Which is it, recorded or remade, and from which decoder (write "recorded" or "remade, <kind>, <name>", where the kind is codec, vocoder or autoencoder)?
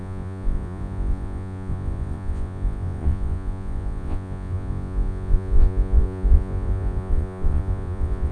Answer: remade, vocoder, Vocos